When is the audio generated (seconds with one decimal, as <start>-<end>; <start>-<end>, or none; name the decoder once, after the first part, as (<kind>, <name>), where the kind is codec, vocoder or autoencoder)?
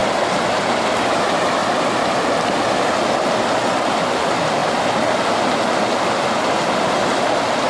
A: 4.6-5.7 (vocoder, BigVGAN v2)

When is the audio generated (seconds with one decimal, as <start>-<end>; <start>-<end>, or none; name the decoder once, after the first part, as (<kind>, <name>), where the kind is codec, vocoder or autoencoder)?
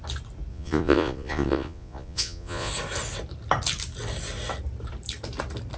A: 0.5-2.7 (vocoder, Vocos)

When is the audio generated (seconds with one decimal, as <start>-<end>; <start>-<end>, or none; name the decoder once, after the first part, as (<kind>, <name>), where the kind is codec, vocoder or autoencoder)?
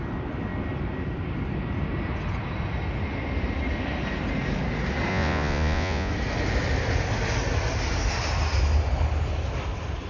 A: 5.1-6.1 (vocoder, Vocos)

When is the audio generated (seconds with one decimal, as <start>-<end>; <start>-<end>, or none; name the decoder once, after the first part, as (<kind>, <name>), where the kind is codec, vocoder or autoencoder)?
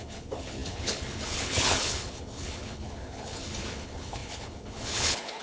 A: 0.0-5.4 (codec, HILCodec)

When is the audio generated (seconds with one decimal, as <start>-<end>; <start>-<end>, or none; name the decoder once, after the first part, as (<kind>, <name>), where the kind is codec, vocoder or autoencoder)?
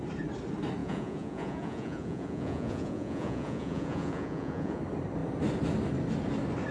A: 0.8-4.8 (vocoder, Vocos)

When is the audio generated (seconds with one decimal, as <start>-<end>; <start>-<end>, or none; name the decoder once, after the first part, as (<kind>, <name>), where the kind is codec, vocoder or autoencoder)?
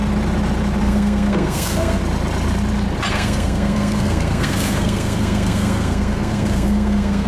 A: 0.8-2.0 (codec, SNAC); 3.1-7.3